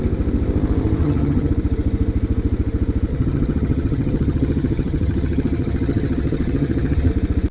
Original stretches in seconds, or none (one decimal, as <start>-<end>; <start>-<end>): 0.0-1.0; 1.5-3.1; 7.1-7.5